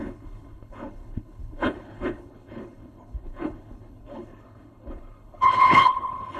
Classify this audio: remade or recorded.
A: remade